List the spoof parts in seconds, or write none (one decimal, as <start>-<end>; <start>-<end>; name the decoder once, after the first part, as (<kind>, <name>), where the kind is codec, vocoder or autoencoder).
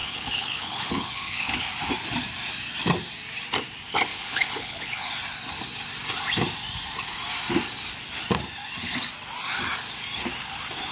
0.0-1.7 (codec, HILCodec); 4.1-5.1